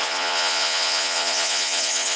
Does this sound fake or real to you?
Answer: fake